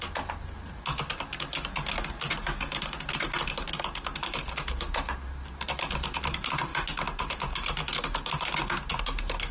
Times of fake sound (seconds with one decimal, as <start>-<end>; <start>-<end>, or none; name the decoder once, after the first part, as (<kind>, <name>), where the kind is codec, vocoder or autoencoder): none